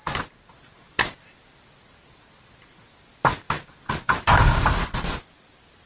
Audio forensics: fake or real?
real